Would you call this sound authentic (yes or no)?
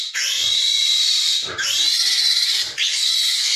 no